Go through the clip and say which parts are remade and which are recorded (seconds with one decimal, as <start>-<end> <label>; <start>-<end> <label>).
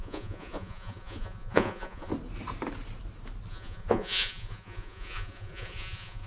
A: 0.0-2.1 remade; 2.1-3.5 recorded; 3.5-6.3 remade